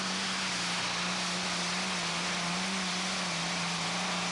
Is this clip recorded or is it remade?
recorded